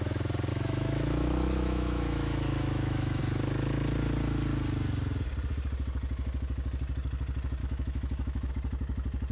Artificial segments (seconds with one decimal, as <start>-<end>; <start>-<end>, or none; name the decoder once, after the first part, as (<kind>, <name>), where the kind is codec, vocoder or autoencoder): 0.5-3.2 (autoencoder, DAC-VAE); 7.6-8.5